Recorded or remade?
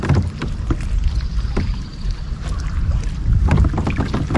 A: recorded